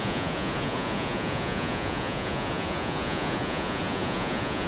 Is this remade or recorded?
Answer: remade